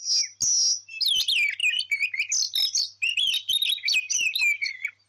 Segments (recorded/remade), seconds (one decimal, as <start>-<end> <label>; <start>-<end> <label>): 0.0-1.6 recorded; 1.6-5.1 remade